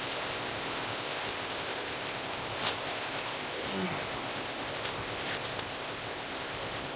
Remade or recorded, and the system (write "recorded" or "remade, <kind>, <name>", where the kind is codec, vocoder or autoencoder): remade, codec, ZipCodec